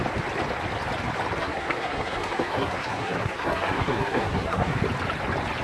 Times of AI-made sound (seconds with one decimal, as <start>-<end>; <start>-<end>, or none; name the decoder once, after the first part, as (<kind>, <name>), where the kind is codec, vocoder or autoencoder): 1.4-4.8 (codec, SNAC)